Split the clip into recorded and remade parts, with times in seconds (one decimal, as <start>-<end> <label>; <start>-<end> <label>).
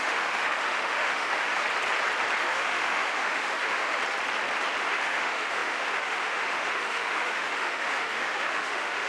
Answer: 0.0-1.6 remade; 1.6-2.4 recorded; 2.4-4.0 remade; 4.0-4.8 recorded; 4.8-9.1 remade